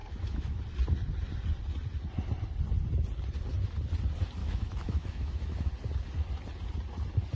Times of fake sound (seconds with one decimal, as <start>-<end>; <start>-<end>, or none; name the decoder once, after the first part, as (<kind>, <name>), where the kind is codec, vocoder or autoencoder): 0.0-0.6 (autoencoder, DAC-VAE); 4.4-5.7